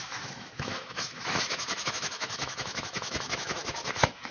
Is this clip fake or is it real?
fake